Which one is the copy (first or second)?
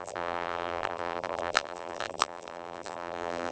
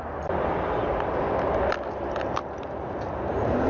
first